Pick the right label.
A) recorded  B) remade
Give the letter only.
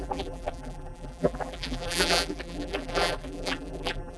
B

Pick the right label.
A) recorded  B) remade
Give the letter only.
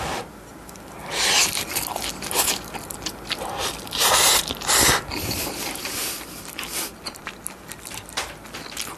A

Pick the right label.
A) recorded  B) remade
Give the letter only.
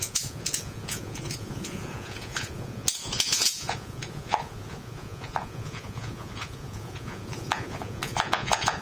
B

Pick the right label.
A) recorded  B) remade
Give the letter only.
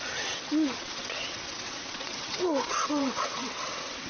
B